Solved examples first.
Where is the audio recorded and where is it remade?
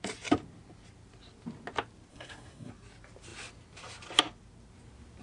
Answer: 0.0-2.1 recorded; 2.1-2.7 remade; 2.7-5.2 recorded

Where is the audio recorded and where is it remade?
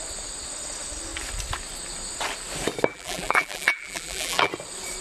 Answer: 0.0-2.9 recorded; 2.9-4.5 remade; 4.5-5.0 recorded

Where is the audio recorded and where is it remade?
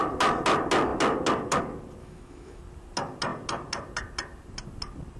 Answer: 0.0-2.0 recorded; 2.0-2.6 remade; 2.6-5.2 recorded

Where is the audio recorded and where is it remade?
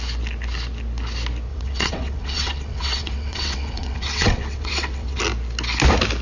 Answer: 0.0-1.5 recorded; 1.5-5.2 remade; 5.2-6.2 recorded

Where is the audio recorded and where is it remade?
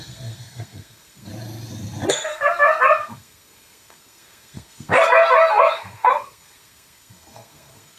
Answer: 0.0-1.3 remade; 1.3-2.1 recorded; 2.1-8.0 remade